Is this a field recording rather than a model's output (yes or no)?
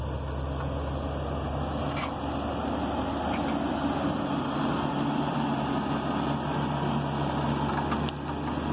yes